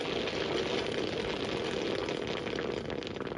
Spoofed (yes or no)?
no